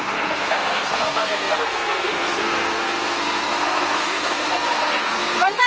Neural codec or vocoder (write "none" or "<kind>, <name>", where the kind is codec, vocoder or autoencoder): codec, SNAC